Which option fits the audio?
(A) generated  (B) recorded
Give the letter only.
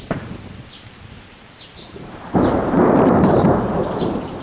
A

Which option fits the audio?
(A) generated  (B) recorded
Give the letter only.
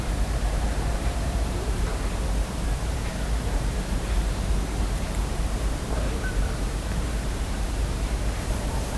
A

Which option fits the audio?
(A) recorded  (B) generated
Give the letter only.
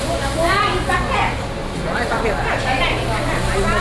A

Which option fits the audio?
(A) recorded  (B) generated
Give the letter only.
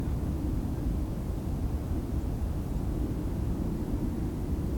A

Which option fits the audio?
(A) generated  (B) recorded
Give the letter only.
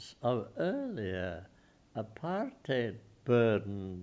B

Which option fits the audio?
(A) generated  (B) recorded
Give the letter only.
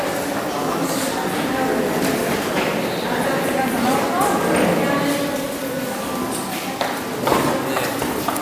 B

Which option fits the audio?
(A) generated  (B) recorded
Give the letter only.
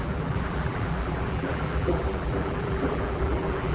A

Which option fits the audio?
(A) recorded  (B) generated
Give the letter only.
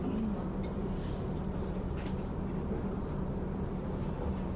A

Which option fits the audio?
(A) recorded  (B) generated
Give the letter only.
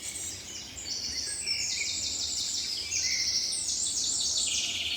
B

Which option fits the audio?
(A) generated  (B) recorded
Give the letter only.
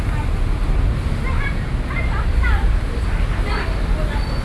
B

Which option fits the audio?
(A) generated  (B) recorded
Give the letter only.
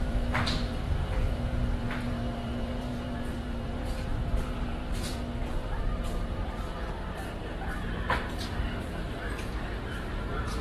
A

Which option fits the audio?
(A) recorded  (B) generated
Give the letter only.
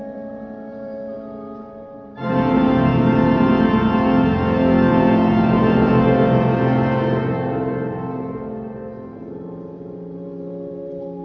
B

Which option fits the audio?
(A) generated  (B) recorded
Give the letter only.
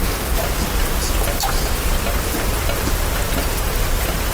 B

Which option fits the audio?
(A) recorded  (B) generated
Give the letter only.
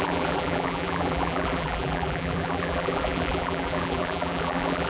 B